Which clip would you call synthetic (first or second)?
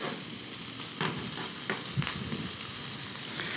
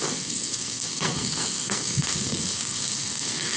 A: second